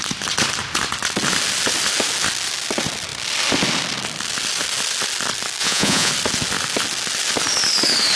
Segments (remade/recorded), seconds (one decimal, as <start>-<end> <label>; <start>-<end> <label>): 0.0-5.6 recorded; 5.6-6.1 remade; 6.1-8.2 recorded